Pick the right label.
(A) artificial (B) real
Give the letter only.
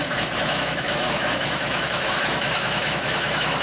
A